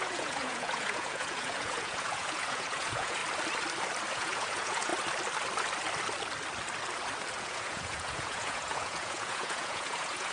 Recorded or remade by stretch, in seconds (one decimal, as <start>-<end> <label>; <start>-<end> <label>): 0.0-3.2 remade; 3.2-4.1 recorded; 4.1-4.9 remade; 4.9-7.4 recorded; 7.4-10.3 remade